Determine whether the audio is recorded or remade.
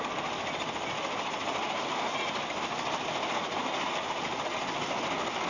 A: recorded